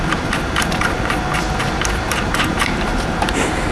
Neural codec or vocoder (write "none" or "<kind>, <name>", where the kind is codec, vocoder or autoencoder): vocoder, BigVGAN v2